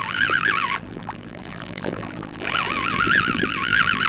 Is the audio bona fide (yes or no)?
no